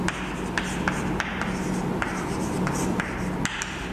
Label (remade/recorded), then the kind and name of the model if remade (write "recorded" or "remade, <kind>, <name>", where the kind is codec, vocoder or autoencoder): recorded